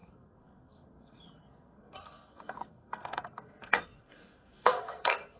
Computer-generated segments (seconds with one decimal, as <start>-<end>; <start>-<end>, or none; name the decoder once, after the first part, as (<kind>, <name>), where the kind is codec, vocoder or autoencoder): 0.0-5.4 (codec, SNAC)